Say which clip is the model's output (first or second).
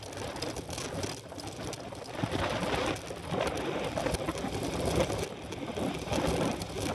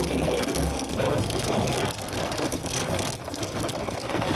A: second